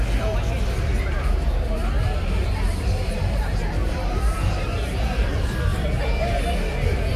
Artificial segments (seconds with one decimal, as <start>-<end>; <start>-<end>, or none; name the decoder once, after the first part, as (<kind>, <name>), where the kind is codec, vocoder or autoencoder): 0.9-3.4 (vocoder, BigVGAN v2); 3.8-6.0